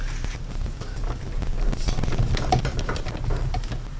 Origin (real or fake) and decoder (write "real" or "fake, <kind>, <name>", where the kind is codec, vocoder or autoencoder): real